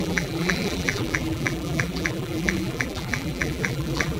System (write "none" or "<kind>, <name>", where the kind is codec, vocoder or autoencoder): vocoder, BigVGAN v2